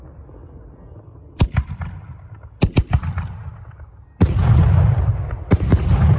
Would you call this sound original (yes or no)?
yes